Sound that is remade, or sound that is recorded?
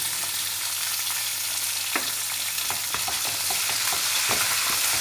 recorded